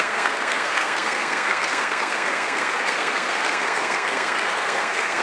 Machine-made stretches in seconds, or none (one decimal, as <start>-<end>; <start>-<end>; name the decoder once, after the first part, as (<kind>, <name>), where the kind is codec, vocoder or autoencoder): 0.0-5.2 (codec, SNAC)